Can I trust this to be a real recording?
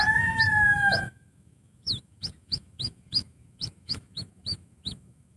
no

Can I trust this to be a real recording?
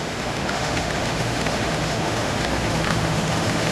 no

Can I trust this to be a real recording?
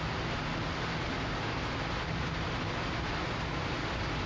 yes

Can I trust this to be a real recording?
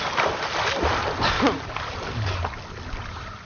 yes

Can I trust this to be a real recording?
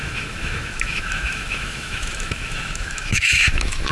no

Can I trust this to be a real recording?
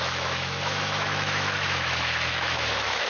no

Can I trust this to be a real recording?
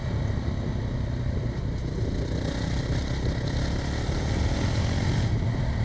yes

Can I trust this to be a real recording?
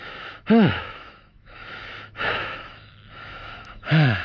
no